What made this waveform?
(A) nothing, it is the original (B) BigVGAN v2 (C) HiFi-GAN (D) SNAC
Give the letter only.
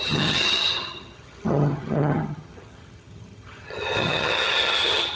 C